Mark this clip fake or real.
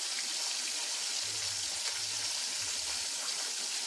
real